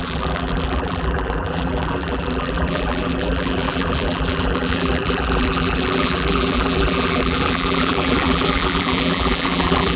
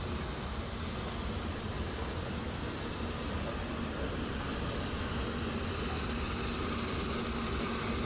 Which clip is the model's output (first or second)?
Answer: first